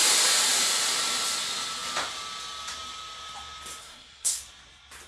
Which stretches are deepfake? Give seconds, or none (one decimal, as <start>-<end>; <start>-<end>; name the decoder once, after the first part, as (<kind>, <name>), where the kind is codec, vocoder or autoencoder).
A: 3.8-4.4 (codec, SNAC)

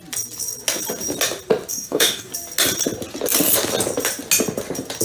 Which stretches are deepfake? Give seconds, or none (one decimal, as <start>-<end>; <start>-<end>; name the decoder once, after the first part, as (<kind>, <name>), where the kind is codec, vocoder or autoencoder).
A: 1.7-2.3 (codec, DAC)